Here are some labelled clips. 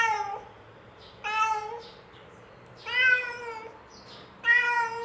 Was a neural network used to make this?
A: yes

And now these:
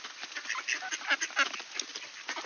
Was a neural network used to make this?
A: no